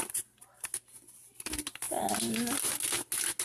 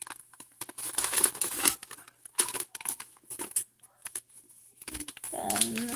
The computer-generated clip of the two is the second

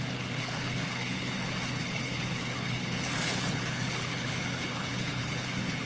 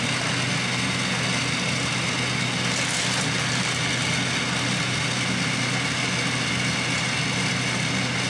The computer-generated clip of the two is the first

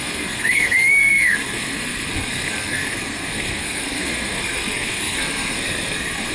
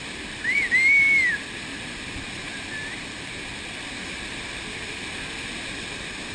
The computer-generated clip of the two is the first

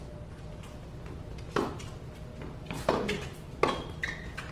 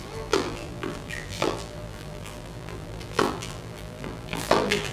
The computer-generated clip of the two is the second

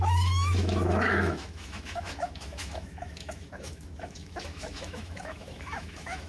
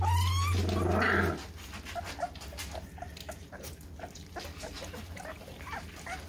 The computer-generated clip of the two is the first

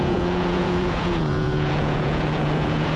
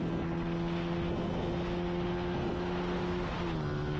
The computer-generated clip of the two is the first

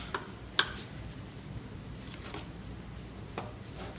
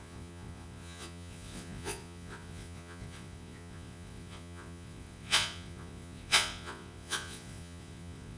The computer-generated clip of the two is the second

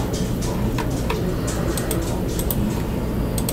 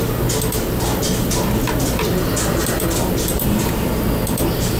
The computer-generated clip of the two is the second